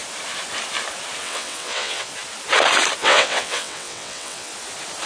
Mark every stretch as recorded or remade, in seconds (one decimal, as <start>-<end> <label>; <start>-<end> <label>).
0.0-1.2 recorded; 1.2-2.1 remade; 2.1-3.0 recorded; 3.0-4.5 remade; 4.5-5.1 recorded